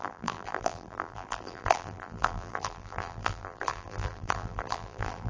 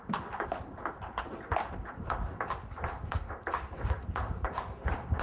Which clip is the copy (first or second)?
first